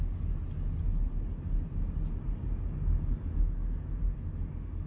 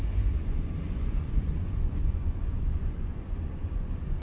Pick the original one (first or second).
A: first